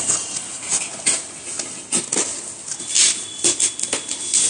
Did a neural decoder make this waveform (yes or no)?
no